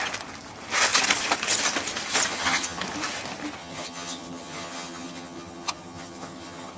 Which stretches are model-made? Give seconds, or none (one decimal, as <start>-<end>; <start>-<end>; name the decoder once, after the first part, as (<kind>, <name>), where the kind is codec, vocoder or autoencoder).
2.3-2.8 (vocoder, HiFi-GAN); 3.6-6.8